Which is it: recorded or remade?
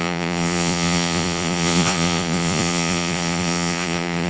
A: remade